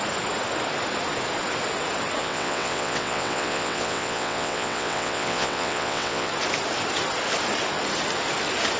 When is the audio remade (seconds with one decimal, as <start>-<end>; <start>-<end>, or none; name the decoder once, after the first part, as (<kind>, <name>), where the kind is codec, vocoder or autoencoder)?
2.2-6.3 (vocoder, WaveNeXt)